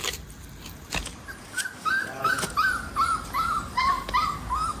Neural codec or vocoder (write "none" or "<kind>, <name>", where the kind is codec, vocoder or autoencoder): none